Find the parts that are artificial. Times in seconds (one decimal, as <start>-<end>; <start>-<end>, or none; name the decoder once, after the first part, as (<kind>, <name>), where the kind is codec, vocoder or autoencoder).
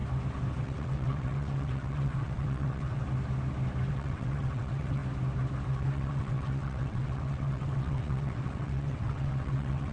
0.6-3.0 (vocoder, WaveNeXt); 3.9-5.0; 5.7-9.9